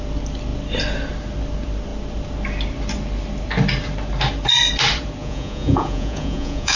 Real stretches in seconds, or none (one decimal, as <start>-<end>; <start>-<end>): 0.0-5.2